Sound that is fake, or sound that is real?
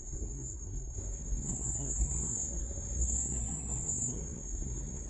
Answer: fake